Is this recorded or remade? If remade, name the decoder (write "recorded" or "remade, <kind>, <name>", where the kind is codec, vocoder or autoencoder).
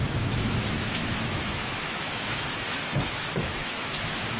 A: remade, autoencoder, DAC-VAE